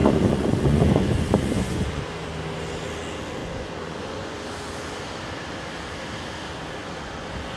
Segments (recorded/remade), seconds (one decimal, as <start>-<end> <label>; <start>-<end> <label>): 0.0-2.0 remade; 2.0-3.4 recorded; 3.4-4.4 remade; 4.4-6.8 recorded; 6.8-7.6 remade